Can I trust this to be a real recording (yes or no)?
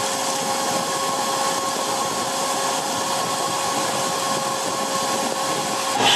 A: yes